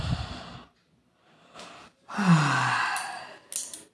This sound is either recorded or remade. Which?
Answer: recorded